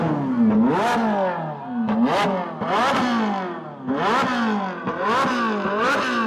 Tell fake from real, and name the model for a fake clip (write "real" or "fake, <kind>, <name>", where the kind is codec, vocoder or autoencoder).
real